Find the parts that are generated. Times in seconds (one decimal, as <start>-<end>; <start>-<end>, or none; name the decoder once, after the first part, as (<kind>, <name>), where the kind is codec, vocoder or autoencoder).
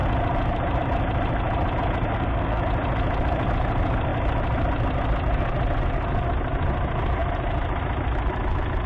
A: 2.1-2.6 (codec, SNAC)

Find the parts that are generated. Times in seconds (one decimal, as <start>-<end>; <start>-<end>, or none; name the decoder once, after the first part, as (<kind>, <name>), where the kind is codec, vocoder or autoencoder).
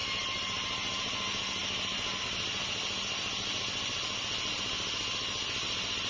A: none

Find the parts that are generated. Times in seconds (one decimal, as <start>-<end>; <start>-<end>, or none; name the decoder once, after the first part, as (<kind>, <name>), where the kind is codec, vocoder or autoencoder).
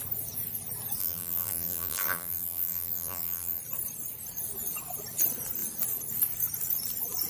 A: 1.0-3.6 (vocoder, BigVGAN v2)